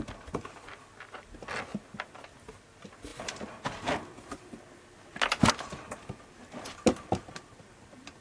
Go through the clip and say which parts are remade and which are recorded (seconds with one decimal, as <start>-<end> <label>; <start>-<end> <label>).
0.0-8.2 recorded